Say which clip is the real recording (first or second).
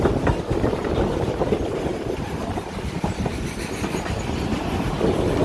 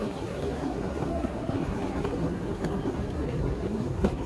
first